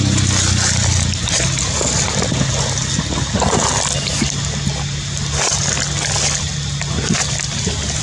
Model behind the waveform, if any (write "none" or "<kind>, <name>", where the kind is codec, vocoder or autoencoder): none